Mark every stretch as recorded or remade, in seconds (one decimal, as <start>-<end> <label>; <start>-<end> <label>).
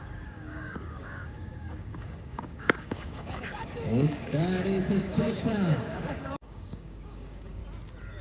0.0-7.6 remade; 7.6-8.2 recorded